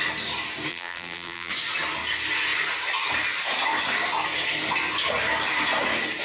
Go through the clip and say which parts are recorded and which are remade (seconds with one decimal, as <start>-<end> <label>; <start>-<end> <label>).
0.0-0.7 recorded; 0.7-1.5 remade; 1.5-6.2 recorded